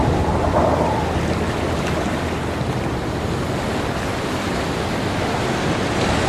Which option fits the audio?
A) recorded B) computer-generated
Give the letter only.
A